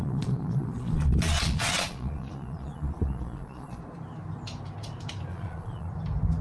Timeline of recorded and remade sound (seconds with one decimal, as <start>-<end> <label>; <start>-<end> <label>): 0.0-3.8 remade; 3.8-5.3 recorded; 5.3-5.9 remade; 5.9-6.4 recorded